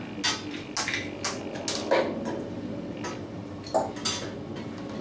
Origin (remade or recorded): recorded